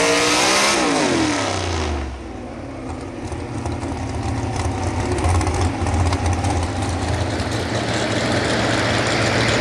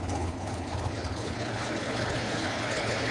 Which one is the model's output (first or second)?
second